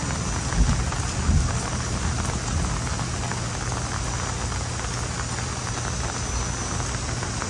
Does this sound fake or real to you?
real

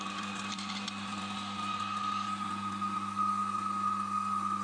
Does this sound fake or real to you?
real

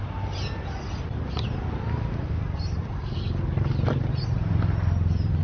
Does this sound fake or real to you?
real